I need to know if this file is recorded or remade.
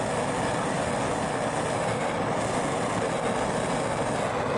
recorded